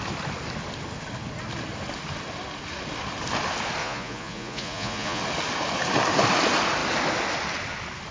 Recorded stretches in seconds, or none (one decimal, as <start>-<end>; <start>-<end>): 0.0-3.8; 5.2-8.1